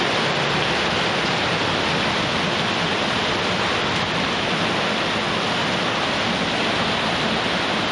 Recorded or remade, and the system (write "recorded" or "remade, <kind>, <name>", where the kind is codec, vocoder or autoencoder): recorded